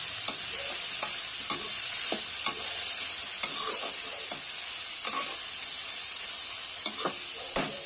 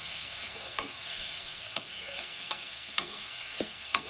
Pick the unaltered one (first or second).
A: first